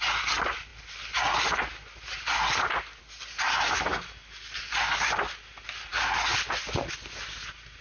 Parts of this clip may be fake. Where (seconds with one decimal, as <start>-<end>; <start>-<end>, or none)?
none